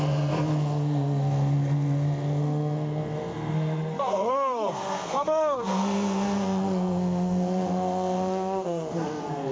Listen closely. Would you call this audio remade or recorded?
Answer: remade